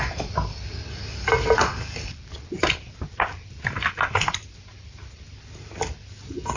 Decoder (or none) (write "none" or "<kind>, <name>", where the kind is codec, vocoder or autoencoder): none